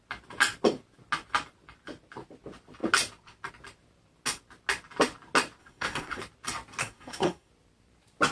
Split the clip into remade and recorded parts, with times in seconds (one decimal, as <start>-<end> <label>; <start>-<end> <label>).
0.0-5.6 recorded; 5.6-6.2 remade; 6.2-6.8 recorded; 6.8-7.5 remade; 7.5-8.3 recorded